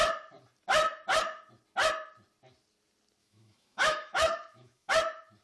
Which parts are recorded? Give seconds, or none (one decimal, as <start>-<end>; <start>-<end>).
0.0-3.2; 4.9-5.4